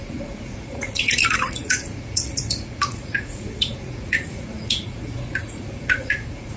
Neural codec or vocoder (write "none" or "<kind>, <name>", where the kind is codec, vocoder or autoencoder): vocoder, Vocos